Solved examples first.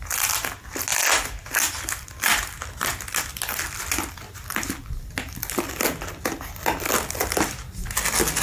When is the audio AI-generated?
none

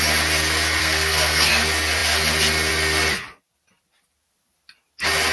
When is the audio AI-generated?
0.8-1.5 (codec, SNAC)

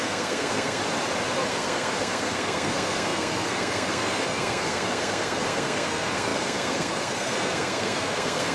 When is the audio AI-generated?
0.0-0.8 (codec, SNAC); 1.5-8.5

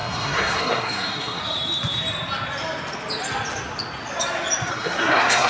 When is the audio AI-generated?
0.0-1.4 (codec, SNAC); 4.7-5.5

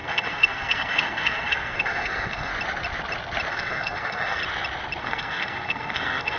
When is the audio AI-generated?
0.0-2.5 (codec, SNAC); 3.5-4.4; 5.0-6.4